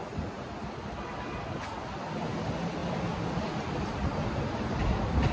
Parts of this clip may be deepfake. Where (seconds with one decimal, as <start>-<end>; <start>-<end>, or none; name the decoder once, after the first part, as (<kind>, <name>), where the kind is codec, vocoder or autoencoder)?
none